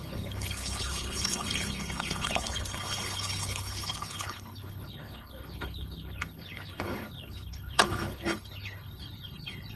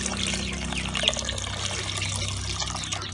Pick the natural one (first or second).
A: second